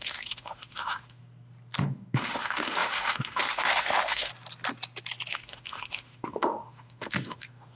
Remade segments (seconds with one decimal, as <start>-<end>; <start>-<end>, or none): 0.0-1.2; 1.8-4.3; 5.3-7.8